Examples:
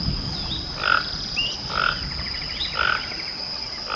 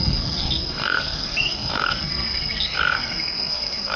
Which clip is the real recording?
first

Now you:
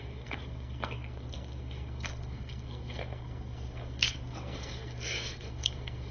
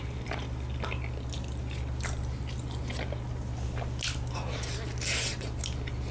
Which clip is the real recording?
second